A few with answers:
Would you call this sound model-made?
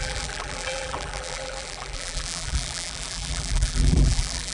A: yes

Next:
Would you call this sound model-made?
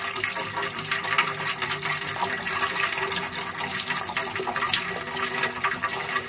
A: no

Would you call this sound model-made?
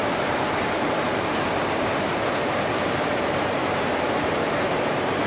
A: yes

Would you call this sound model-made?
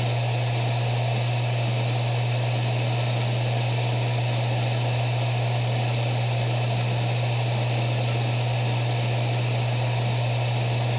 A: no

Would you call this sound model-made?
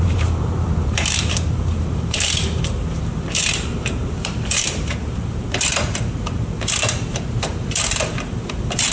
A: yes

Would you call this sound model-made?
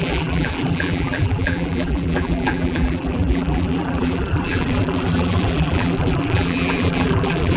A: yes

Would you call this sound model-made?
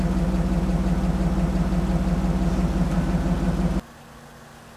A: no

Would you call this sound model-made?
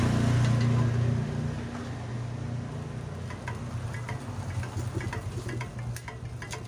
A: no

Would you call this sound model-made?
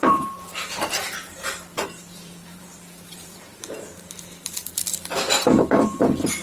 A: yes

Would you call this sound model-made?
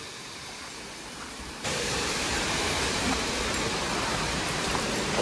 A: yes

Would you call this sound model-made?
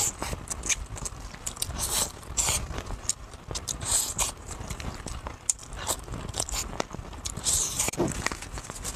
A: no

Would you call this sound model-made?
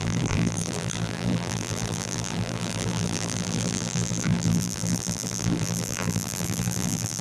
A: yes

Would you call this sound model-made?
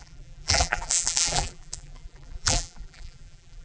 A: yes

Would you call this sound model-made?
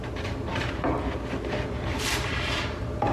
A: yes